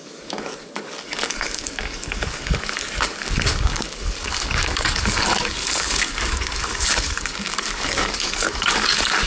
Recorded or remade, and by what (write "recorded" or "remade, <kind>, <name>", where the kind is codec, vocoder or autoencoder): remade, codec, DAC